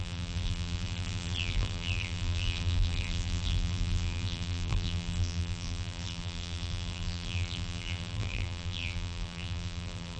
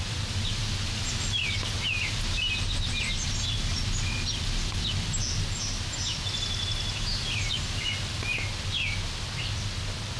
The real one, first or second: second